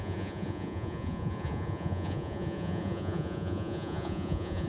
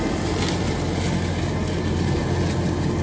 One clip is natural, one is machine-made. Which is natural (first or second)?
second